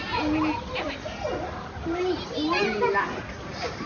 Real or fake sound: real